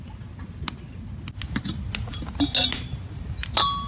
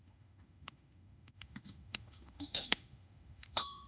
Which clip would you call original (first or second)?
first